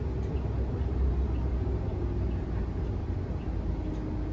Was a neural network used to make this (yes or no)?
no